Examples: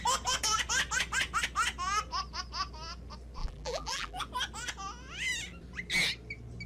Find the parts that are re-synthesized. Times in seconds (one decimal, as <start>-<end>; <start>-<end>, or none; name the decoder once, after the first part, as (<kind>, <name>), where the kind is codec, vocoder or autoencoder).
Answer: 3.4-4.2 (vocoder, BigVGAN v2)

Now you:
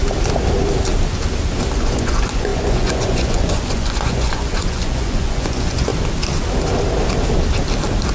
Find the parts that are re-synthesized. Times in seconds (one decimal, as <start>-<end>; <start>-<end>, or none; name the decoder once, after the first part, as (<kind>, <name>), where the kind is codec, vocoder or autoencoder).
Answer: 1.8-5.9 (vocoder, Vocos)

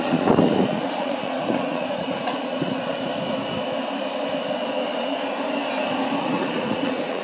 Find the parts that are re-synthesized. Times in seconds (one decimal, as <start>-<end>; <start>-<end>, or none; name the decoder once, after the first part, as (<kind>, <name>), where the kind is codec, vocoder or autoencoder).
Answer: 0.0-3.1 (vocoder, Vocos); 6.2-7.2